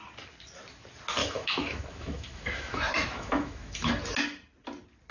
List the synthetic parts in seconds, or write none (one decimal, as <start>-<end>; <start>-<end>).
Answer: 1.2-3.9